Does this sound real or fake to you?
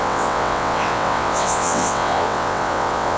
fake